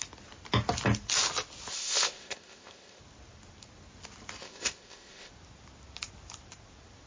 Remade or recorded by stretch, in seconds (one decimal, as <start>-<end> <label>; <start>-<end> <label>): 0.0-1.7 recorded; 1.7-3.0 remade; 3.0-4.4 recorded; 4.4-5.3 remade; 5.3-7.1 recorded